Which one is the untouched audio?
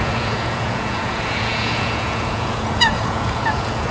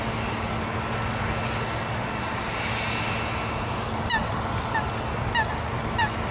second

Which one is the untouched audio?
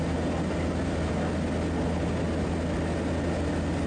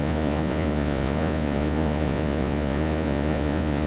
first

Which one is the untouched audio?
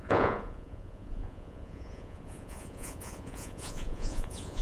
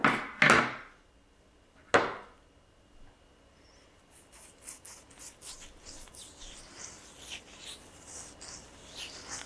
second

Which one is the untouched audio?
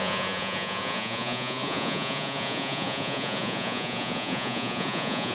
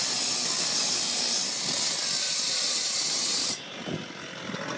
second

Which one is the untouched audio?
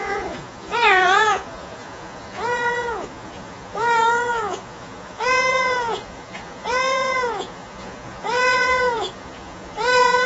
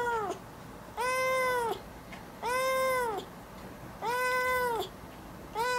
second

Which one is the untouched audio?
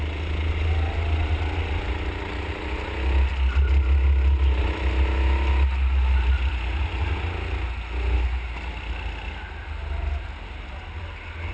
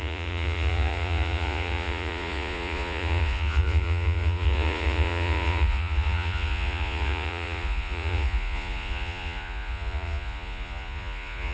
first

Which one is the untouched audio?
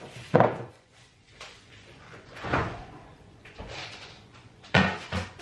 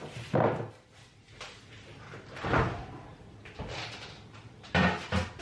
second